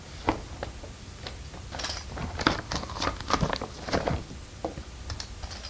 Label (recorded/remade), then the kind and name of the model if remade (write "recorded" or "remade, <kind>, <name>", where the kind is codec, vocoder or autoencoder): recorded